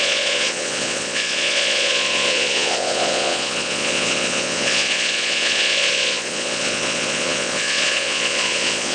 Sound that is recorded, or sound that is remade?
remade